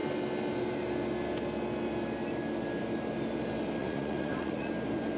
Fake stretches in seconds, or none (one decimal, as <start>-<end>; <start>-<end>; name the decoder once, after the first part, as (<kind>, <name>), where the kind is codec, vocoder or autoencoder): 3.8-4.7 (vocoder, Vocos)